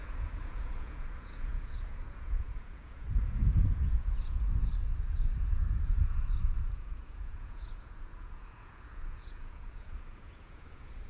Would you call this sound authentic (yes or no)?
no